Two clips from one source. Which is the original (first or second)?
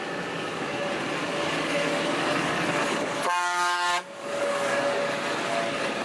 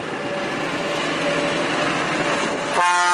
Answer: second